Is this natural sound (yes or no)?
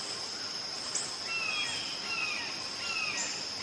yes